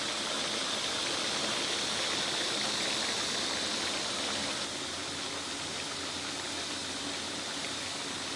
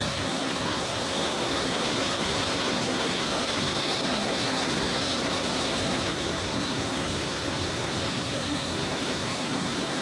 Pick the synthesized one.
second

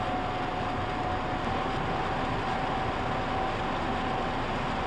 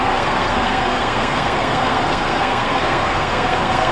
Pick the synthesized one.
second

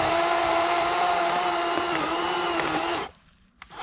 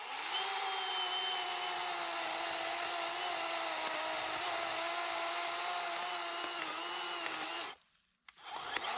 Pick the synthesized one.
first